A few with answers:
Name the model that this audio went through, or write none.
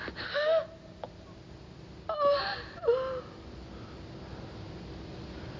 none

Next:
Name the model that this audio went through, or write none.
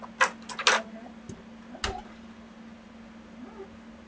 none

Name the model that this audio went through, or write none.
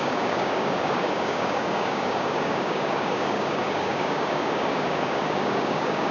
codec, DAC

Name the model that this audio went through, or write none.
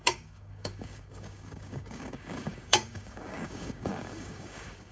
codec, DAC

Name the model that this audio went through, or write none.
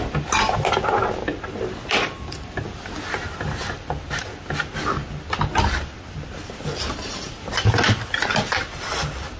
none